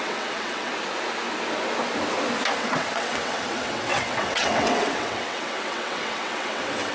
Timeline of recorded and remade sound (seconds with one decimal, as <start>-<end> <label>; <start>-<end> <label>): 0.0-0.7 remade; 0.7-2.6 recorded; 2.6-6.9 remade